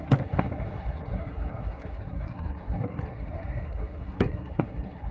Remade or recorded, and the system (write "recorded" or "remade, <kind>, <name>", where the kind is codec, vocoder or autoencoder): remade, codec, SNAC